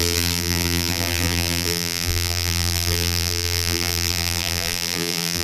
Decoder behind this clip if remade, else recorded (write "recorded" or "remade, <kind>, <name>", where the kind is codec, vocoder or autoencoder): remade, vocoder, BigVGAN v2